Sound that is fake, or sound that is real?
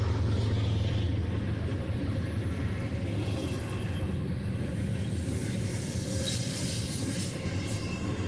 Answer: real